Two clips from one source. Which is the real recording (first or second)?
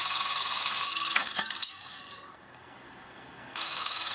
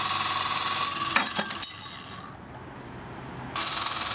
second